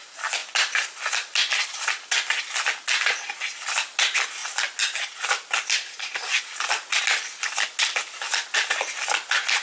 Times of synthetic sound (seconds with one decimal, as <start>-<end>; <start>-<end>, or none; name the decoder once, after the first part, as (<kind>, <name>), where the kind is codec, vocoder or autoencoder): none